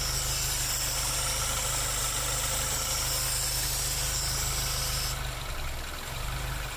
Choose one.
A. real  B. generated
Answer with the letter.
A